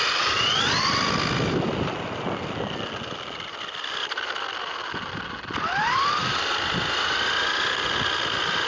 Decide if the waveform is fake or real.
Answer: real